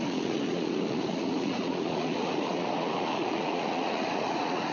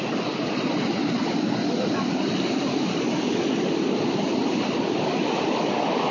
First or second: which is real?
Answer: second